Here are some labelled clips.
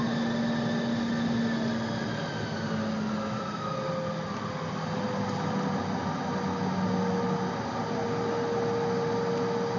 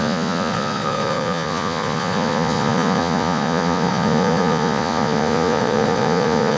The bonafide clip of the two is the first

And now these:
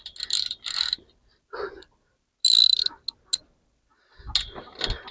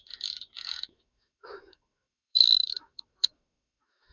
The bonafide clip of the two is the first